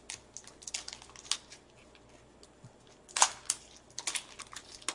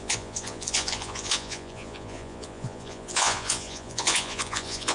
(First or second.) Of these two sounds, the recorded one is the first